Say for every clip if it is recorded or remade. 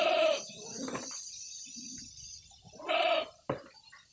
recorded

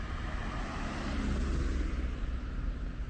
recorded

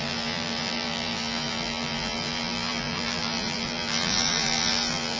remade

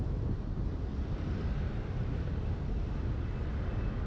recorded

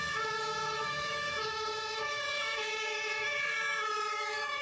remade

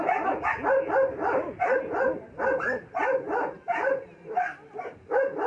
recorded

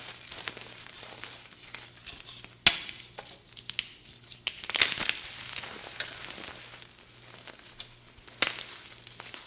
recorded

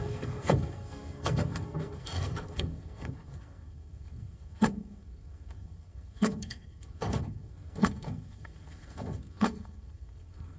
remade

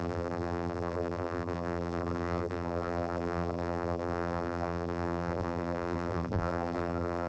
remade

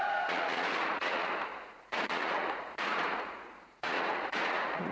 remade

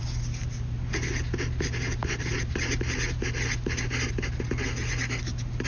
recorded